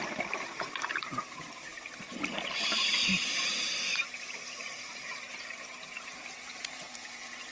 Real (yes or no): no